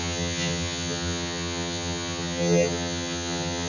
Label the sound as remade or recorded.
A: remade